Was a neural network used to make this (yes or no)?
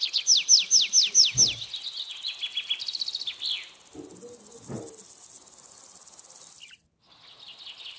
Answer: no